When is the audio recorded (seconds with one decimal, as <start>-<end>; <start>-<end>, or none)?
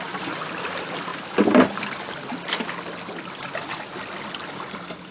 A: 0.0-5.1